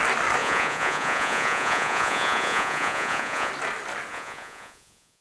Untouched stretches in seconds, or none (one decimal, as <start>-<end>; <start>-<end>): 0.0-0.4; 3.5-4.1